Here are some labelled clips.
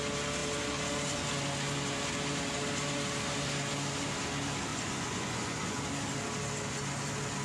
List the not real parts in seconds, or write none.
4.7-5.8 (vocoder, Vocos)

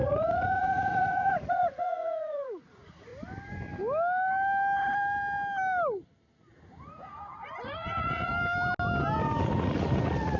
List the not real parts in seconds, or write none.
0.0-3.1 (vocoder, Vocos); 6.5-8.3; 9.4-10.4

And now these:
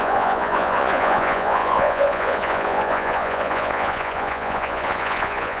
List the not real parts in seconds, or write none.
0.0-5.6 (vocoder, Vocos)

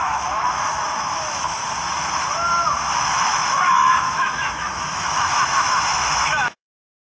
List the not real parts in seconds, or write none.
0.0-1.6 (autoencoder, DAC-VAE); 2.9-7.2